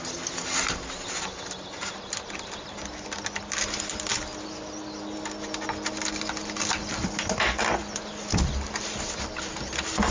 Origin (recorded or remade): recorded